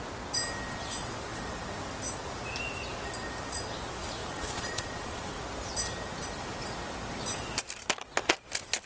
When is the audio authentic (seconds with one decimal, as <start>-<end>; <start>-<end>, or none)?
0.0-4.2; 5.3-8.9